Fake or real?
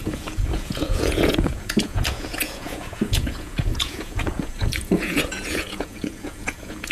fake